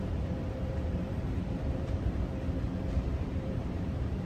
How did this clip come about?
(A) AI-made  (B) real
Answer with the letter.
A